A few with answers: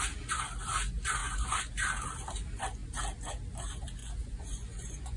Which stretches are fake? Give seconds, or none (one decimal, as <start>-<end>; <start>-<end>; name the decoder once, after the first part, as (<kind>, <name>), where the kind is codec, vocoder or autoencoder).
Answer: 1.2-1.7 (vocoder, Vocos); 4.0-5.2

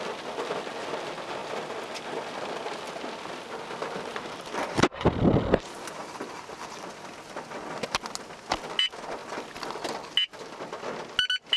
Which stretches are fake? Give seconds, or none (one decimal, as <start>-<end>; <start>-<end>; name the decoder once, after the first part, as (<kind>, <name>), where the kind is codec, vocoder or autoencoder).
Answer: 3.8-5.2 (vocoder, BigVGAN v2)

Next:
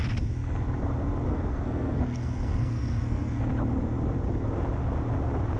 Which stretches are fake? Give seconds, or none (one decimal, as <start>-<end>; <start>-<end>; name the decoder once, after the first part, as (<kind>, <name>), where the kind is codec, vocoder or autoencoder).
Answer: 1.3-3.4 (codec, SNAC)

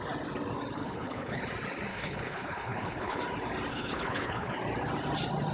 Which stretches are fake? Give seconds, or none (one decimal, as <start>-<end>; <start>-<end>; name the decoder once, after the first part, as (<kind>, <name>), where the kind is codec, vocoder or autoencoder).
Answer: 0.8-1.4 (codec, HILCodec); 1.9-3.2; 3.7-4.5

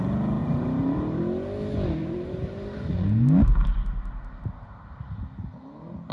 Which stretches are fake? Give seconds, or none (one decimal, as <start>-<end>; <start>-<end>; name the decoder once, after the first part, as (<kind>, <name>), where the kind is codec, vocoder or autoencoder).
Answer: 0.4-1.2 (vocoder, BigVGAN v2); 2.0-2.9

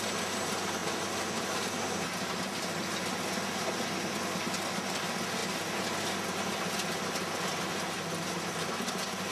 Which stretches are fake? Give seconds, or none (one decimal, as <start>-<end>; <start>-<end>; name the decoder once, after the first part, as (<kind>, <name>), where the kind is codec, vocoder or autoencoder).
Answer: none

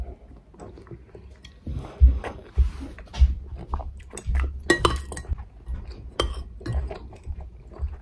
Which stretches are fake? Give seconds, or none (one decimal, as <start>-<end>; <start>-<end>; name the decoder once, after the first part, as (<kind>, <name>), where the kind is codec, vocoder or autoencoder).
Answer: 1.7-2.5 (codec, DAC)